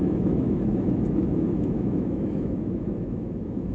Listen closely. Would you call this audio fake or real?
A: fake